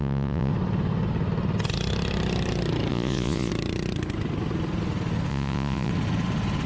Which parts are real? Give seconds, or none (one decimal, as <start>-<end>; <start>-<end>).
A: 0.5-2.9; 3.5-5.3; 5.9-6.7